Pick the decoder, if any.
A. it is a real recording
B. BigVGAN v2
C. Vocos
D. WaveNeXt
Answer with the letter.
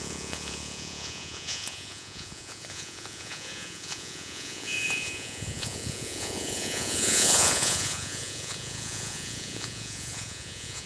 C